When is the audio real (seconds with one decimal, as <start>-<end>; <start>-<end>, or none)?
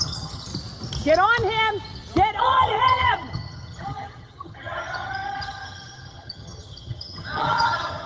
0.5-2.4